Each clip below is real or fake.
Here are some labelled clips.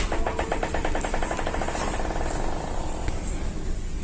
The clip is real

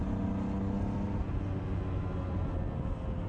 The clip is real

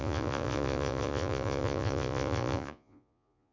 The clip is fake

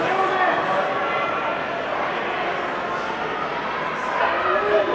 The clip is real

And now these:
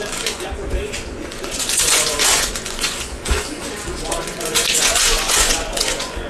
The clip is fake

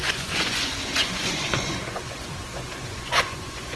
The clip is fake